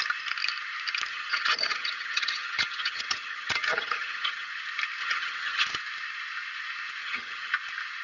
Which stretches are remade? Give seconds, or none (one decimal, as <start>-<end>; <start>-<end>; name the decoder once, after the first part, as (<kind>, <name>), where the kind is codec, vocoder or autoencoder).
1.1-4.5 (vocoder, HiFi-GAN); 5.0-5.6; 7.0-7.5